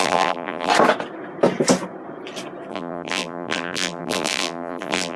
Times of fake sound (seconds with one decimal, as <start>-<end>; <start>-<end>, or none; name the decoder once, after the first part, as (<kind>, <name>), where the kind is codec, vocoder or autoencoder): 0.0-0.7 (vocoder, BigVGAN v2); 2.7-5.2